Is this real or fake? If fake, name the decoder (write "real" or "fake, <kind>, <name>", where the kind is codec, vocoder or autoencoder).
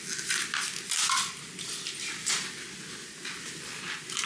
real